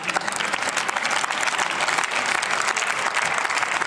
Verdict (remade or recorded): remade